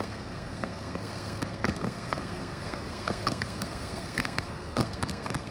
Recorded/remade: remade